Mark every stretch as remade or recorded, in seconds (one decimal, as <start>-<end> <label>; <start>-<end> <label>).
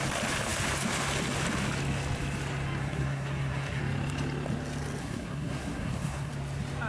0.0-2.8 recorded; 2.8-3.8 remade; 3.8-5.0 recorded; 5.0-6.3 remade; 6.3-6.9 recorded